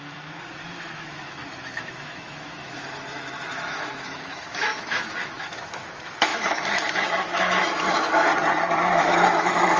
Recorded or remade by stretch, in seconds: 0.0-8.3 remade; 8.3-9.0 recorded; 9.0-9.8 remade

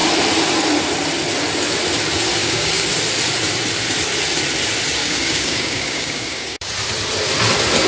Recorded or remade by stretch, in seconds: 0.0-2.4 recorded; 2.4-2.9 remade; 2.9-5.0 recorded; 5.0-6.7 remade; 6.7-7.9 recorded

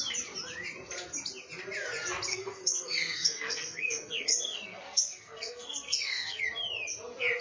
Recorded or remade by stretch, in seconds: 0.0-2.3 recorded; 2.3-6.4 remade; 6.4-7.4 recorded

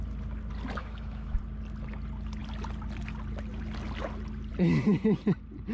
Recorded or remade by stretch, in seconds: 0.0-0.8 recorded; 0.8-1.4 remade; 1.4-5.7 recorded